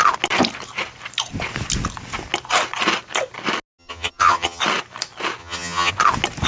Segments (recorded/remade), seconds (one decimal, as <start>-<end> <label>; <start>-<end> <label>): 0.0-3.8 recorded; 3.8-4.6 remade; 4.6-5.4 recorded; 5.4-5.9 remade; 5.9-6.5 recorded